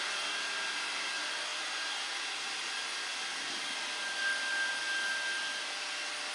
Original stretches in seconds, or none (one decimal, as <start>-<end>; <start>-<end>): 0.0-1.5; 2.5-6.3